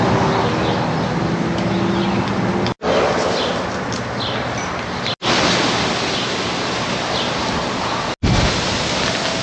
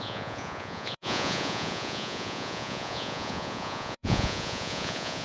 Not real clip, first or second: second